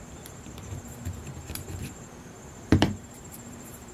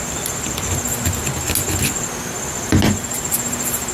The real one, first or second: second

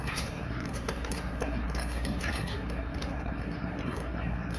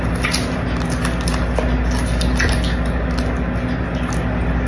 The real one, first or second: second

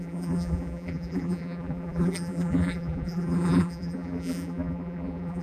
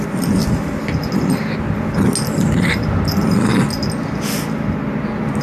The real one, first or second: second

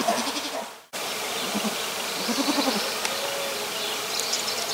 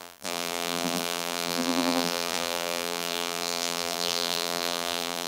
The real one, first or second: first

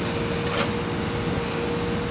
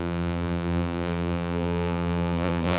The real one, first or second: first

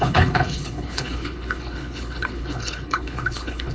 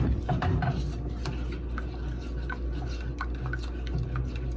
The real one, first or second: second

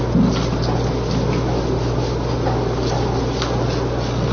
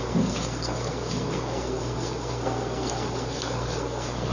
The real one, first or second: first